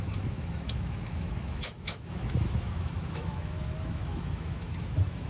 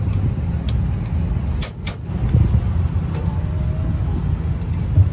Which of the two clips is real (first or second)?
second